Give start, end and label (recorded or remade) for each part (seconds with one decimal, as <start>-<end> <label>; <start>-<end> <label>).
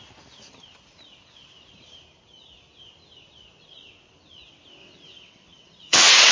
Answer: 0.0-4.8 recorded; 4.8-6.3 remade